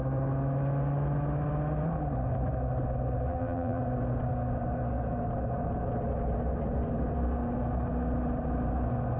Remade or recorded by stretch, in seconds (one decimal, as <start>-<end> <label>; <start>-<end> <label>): 0.0-3.3 recorded; 3.3-3.8 remade; 3.8-9.2 recorded

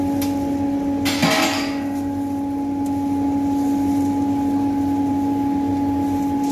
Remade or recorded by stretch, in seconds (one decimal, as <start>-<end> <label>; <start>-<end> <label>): 0.0-6.5 recorded

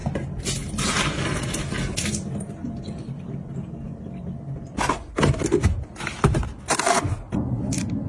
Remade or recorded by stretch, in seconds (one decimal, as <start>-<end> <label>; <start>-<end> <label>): 0.0-6.4 recorded; 6.4-7.0 remade; 7.0-8.1 recorded

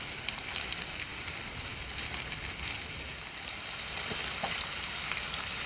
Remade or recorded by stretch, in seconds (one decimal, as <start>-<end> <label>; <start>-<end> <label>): 0.0-5.7 recorded

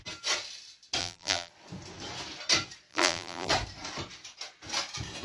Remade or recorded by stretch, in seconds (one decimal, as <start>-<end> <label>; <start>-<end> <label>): 0.0-1.0 recorded; 1.0-1.5 remade; 1.5-2.9 recorded; 2.9-3.5 remade; 3.5-5.2 recorded

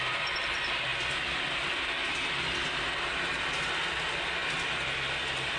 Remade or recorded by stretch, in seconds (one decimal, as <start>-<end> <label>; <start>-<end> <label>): 0.0-5.6 recorded

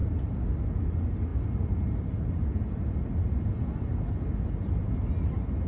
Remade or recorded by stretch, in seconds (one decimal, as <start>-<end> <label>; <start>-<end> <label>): 0.0-5.7 recorded

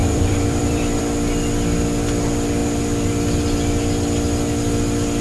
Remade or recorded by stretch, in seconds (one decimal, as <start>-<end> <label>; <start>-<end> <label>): 0.0-1.0 remade; 1.0-5.2 recorded